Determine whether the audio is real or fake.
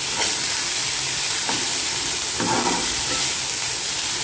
real